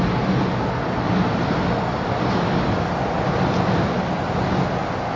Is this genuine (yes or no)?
yes